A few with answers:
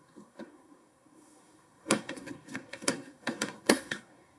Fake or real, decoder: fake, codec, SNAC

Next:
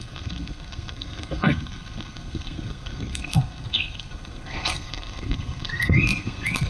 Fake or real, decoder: fake, codec, SNAC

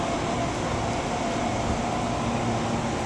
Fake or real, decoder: real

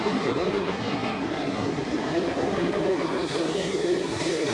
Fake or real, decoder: fake, codec, SNAC